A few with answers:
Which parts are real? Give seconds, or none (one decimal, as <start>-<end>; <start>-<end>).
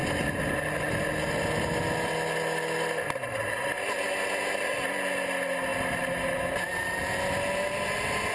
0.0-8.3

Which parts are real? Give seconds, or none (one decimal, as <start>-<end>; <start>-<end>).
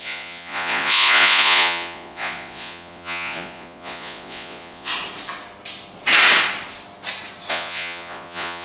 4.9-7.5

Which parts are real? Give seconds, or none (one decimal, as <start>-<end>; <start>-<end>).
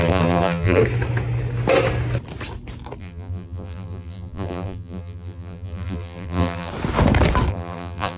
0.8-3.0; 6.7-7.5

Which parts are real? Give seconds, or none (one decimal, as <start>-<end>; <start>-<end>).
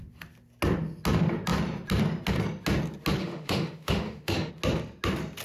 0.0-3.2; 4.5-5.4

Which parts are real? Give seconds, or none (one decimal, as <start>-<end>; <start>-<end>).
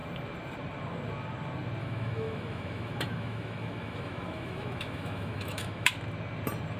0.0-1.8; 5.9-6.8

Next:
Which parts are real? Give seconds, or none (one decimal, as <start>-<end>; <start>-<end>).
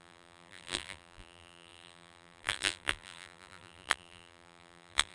none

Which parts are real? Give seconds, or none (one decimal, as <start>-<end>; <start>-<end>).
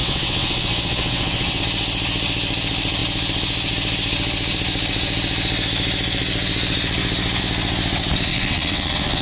1.6-8.3